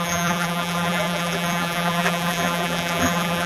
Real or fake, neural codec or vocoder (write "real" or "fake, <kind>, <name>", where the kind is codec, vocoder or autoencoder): fake, vocoder, BigVGAN v2